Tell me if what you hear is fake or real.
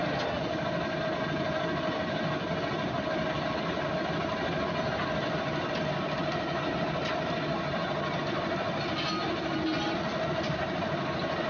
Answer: real